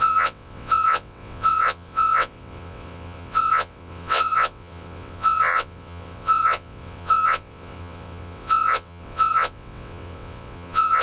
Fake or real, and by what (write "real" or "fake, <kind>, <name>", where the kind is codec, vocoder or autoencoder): fake, vocoder, WaveNeXt